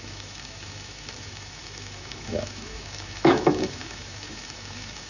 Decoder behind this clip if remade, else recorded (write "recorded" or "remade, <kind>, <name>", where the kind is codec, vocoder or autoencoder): remade, autoencoder, DAC-VAE